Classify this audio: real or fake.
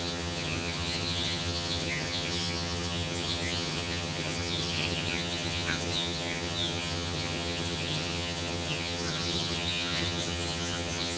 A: fake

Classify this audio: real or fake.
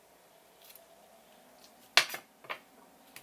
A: real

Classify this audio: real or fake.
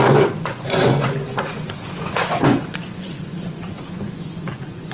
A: fake